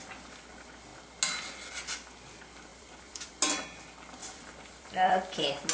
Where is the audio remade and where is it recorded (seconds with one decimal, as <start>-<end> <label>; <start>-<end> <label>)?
0.0-2.7 recorded; 2.7-3.3 remade; 3.3-4.2 recorded; 4.2-5.7 remade